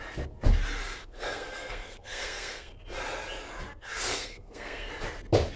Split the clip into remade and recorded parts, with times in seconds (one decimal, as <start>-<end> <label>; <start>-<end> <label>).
0.0-1.0 recorded; 1.0-2.7 remade; 2.7-3.8 recorded; 3.8-4.9 remade; 4.9-5.6 recorded